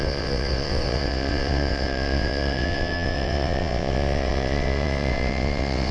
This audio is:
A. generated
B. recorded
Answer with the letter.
A